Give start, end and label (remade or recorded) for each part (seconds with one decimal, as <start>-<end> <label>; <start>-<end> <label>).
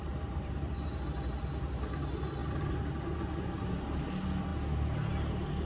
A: 0.0-1.0 remade; 1.0-2.4 recorded; 2.4-4.0 remade; 4.0-5.7 recorded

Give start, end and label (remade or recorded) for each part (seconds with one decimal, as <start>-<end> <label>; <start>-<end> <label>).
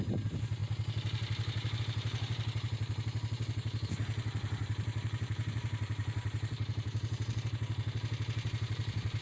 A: 0.0-9.2 remade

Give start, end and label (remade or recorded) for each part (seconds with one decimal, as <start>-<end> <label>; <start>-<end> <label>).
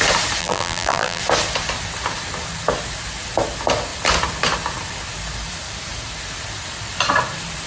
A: 0.0-0.4 recorded; 0.4-1.2 remade; 1.2-7.7 recorded